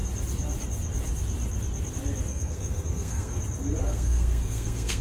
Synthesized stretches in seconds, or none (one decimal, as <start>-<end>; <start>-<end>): 2.3-3.4; 3.8-5.0